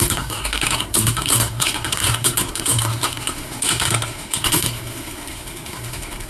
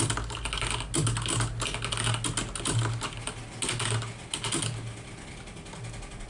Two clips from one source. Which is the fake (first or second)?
first